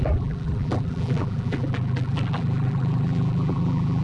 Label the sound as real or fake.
fake